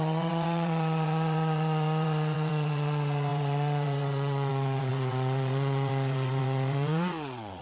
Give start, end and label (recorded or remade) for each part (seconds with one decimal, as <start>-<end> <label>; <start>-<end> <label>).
0.0-7.6 remade

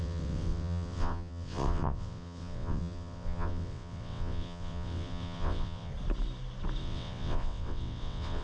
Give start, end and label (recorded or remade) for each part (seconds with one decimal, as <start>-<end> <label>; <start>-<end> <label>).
0.0-5.9 remade; 5.9-6.8 recorded; 6.8-8.4 remade

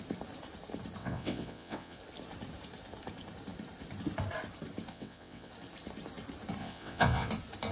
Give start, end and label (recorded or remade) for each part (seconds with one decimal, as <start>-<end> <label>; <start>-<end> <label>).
0.0-1.0 recorded; 1.0-2.0 remade; 2.0-4.9 recorded; 4.9-5.5 remade; 5.5-6.6 recorded; 6.6-7.3 remade; 7.3-7.7 recorded